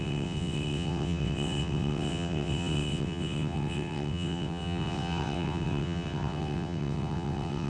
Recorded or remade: remade